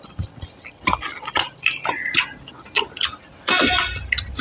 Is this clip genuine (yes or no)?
yes